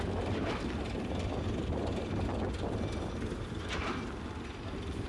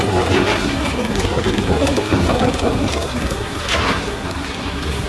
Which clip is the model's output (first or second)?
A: second